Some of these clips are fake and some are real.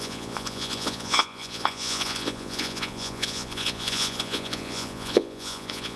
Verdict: fake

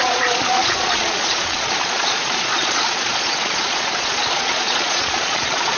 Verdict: fake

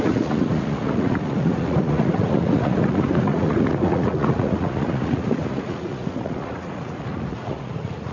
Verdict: fake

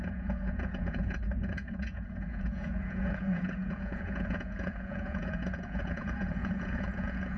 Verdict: fake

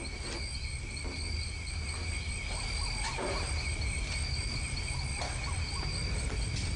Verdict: real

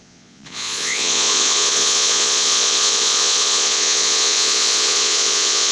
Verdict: fake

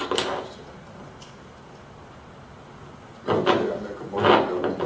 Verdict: real